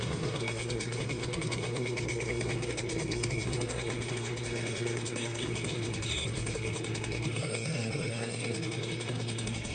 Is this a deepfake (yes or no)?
yes